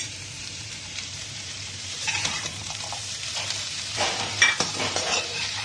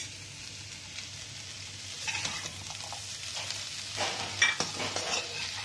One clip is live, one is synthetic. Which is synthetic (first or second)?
first